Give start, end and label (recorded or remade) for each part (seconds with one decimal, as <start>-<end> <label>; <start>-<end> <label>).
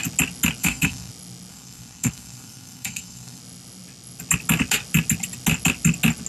0.0-0.6 recorded; 0.6-1.1 remade; 1.1-1.5 recorded; 1.5-3.4 remade; 3.4-6.3 recorded